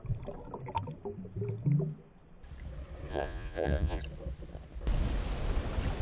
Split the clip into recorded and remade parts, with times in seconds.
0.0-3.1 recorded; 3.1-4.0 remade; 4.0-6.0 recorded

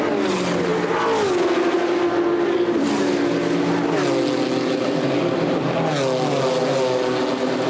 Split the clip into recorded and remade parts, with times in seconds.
0.0-7.7 recorded

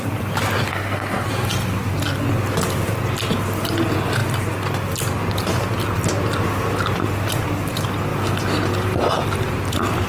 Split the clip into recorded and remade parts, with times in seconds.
0.0-0.7 recorded; 0.7-1.3 remade; 1.3-10.1 recorded

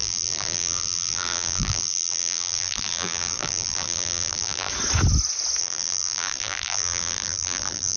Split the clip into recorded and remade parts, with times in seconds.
0.0-4.7 remade; 4.7-5.6 recorded; 5.6-8.0 remade